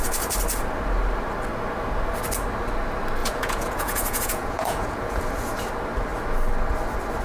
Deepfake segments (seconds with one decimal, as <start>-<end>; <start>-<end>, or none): 3.2-5.2